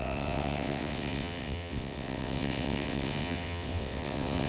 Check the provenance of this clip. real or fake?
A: fake